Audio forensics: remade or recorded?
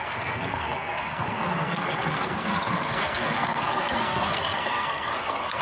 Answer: remade